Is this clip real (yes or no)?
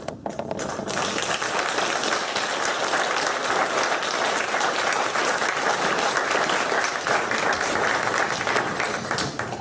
yes